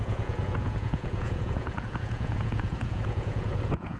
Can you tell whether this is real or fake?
fake